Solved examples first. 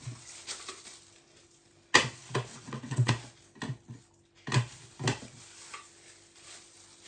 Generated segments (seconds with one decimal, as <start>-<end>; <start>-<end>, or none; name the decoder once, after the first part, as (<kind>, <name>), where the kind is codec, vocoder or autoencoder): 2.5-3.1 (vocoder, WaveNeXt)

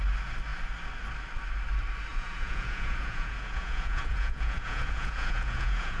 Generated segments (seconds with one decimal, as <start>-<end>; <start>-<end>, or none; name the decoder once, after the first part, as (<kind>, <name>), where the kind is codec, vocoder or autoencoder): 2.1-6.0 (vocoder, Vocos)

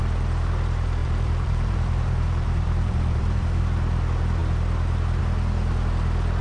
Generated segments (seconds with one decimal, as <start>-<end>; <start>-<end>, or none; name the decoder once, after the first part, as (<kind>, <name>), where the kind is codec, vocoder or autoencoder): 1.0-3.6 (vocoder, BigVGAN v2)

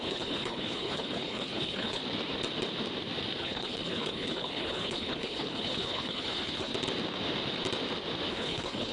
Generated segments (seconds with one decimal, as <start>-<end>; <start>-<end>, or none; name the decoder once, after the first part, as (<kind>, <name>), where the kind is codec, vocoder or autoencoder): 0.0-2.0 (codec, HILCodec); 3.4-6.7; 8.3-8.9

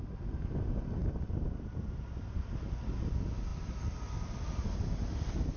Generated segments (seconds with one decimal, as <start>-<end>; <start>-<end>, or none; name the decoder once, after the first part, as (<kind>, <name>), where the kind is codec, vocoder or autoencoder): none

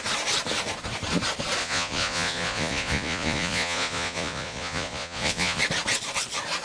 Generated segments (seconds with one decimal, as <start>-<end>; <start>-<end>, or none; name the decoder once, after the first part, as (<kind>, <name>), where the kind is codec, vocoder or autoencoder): 1.6-5.6 (vocoder, Vocos)

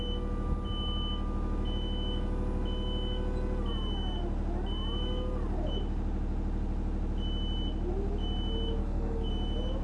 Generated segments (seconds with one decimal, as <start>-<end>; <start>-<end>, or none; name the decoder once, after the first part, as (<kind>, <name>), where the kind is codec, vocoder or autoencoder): 8.8-9.3 (codec, DAC)